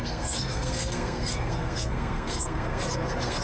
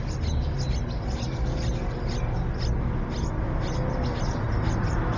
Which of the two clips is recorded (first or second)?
second